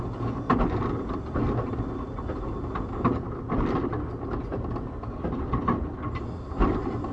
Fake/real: real